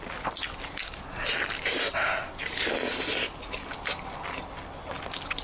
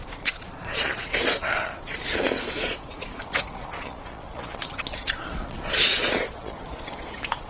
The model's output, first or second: second